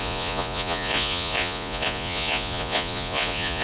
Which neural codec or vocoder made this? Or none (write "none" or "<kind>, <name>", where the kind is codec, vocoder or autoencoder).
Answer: vocoder, Vocos